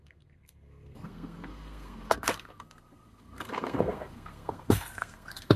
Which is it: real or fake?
fake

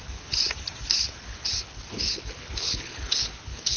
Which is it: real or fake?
fake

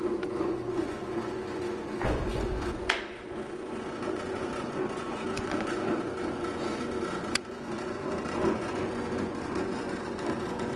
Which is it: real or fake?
fake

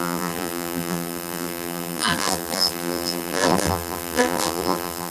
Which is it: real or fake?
fake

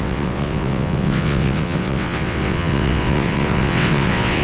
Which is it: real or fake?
fake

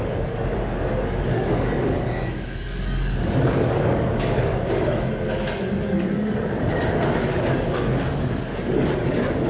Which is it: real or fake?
fake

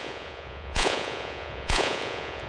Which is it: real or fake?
fake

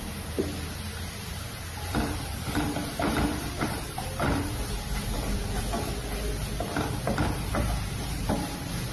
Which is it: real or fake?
fake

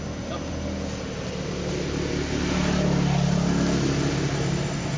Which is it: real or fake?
real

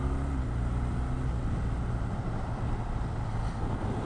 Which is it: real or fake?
real